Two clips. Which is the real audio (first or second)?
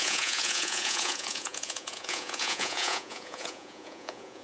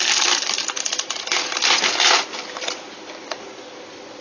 second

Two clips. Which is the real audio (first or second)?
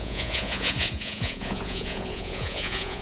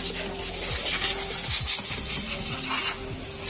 second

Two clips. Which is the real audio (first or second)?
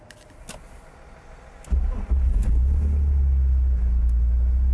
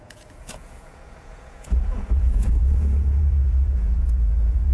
first